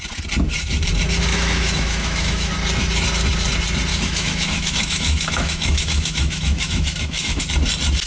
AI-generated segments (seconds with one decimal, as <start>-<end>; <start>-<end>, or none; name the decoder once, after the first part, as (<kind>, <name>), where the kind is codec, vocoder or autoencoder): 1.3-2.5 (autoencoder, DAC-VAE); 3.9-7.4